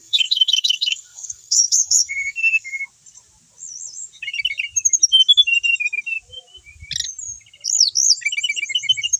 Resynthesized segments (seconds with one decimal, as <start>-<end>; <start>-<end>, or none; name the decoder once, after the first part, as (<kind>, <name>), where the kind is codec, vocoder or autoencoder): 0.0-2.8 (codec, SNAC)